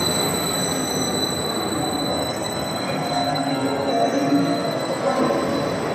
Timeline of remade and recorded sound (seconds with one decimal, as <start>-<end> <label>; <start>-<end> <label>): 0.0-2.1 recorded; 2.1-5.2 remade; 5.2-5.9 recorded